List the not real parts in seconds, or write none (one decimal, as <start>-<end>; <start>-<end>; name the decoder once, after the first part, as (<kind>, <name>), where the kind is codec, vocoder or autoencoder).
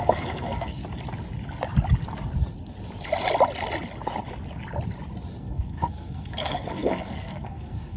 0.0-0.8 (codec, SNAC); 5.4-8.0